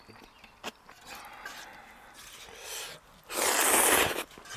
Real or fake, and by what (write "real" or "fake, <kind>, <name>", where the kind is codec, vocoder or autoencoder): real